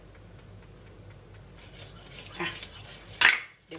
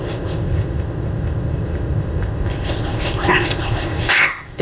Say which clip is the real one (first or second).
first